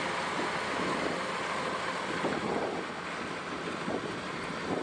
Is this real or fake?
real